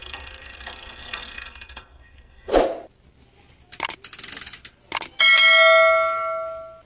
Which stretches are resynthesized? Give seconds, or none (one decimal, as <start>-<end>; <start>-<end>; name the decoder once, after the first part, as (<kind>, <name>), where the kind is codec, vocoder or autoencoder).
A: 0.0-2.5 (codec, SNAC)